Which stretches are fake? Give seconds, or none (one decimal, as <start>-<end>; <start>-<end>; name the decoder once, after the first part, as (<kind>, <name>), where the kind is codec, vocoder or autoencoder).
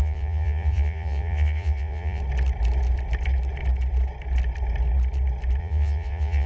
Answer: 0.0-2.2 (vocoder, Vocos); 5.6-6.5